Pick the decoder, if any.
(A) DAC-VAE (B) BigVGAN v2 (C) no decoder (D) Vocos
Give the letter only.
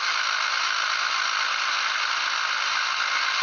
C